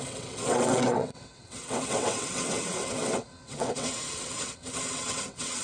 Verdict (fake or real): fake